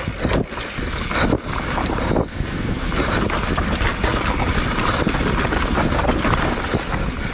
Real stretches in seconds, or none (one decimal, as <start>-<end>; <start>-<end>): 0.0-2.3; 2.9-7.3